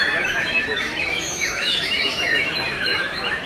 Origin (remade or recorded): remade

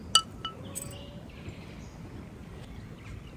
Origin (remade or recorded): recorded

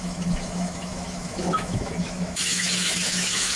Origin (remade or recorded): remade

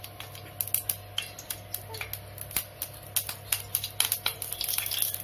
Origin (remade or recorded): recorded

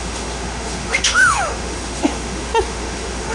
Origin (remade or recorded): remade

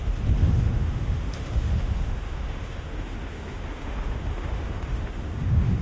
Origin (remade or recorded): remade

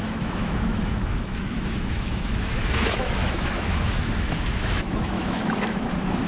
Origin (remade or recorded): remade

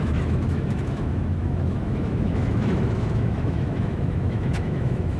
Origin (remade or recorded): remade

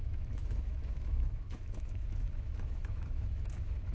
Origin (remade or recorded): remade